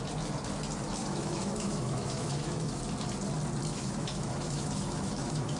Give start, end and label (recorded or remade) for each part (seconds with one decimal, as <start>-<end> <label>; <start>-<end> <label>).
0.0-1.0 recorded; 1.0-2.8 remade; 2.8-3.7 recorded; 3.7-5.6 remade